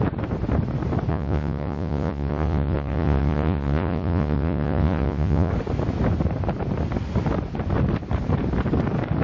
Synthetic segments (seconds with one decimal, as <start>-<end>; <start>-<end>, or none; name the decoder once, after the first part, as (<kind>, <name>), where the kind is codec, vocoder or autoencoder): 1.1-5.5 (vocoder, Vocos)